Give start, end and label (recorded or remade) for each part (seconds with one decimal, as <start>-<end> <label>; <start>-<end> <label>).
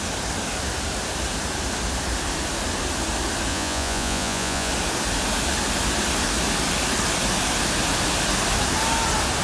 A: 0.0-3.5 recorded; 3.5-4.7 remade; 4.7-9.4 recorded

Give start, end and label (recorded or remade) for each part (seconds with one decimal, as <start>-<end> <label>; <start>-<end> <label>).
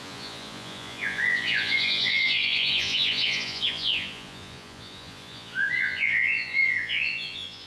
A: 0.0-7.7 remade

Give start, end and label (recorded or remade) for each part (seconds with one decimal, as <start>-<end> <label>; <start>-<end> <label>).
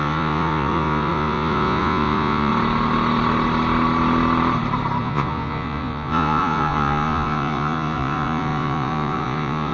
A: 0.0-2.5 remade; 2.5-5.0 recorded; 5.0-9.7 remade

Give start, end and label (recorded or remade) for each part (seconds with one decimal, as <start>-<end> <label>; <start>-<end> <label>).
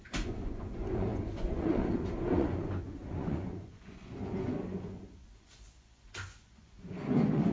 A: 0.0-7.5 remade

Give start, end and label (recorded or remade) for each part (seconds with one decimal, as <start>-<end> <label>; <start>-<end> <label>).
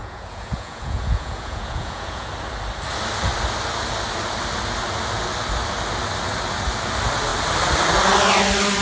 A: 0.0-2.3 remade; 2.3-8.8 recorded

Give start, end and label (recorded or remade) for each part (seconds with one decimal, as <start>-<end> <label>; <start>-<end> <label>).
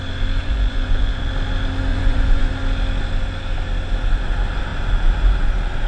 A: 0.0-0.4 recorded; 0.4-1.3 remade; 1.3-1.9 recorded; 1.9-2.5 remade; 2.5-5.9 recorded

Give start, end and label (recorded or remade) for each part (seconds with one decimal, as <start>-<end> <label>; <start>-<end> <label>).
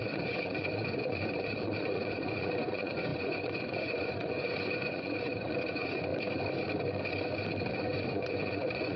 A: 0.0-6.1 remade; 6.1-7.7 recorded; 7.7-9.0 remade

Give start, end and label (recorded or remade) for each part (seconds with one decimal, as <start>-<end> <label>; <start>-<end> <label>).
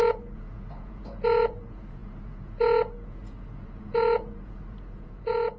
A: 0.0-5.6 remade